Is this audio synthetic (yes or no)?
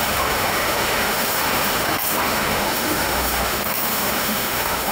yes